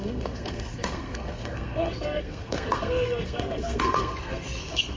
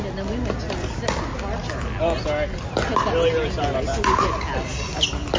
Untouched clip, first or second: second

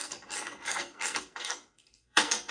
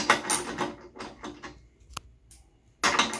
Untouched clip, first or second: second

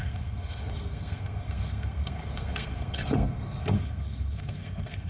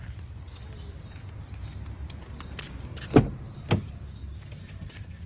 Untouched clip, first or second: second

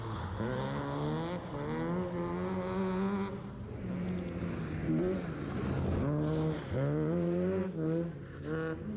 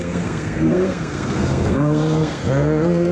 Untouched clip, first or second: first